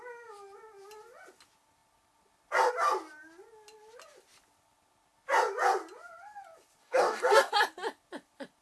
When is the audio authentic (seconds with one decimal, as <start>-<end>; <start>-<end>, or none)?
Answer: 0.0-6.8; 7.5-8.6